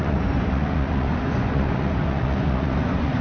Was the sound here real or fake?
fake